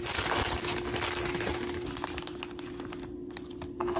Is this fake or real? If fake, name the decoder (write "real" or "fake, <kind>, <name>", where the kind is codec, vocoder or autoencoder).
real